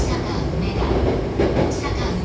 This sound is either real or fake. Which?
real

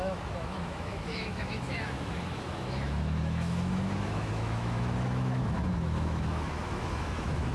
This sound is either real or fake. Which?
fake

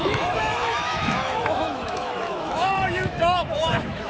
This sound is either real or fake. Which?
fake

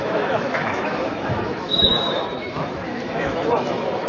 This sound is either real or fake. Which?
fake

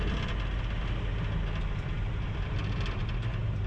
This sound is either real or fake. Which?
real